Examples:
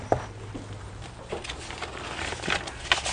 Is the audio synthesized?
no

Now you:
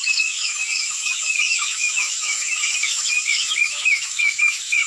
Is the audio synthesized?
yes